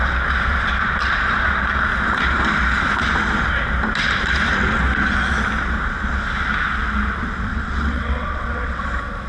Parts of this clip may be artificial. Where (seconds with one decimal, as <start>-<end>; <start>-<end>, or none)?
7.5-8.8